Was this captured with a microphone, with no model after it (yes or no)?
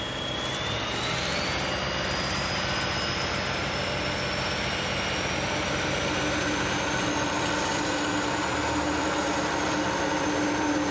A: yes